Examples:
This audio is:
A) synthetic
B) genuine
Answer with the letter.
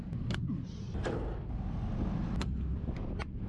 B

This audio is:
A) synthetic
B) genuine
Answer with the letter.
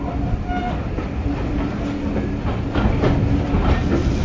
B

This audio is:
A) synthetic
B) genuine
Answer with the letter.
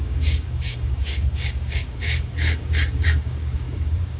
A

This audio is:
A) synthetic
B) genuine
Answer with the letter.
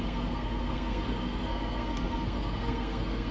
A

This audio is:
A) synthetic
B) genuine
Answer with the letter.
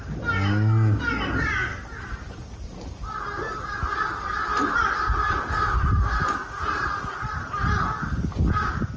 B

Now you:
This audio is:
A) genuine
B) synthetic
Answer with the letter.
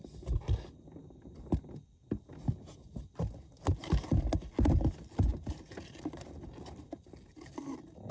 A